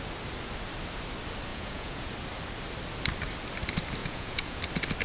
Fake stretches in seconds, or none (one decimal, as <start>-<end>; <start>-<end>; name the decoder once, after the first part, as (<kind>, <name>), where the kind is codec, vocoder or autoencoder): 1.5-2.1 (vocoder, Vocos); 4.0-4.6